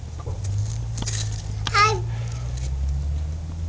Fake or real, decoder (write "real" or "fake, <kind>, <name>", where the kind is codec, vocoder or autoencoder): real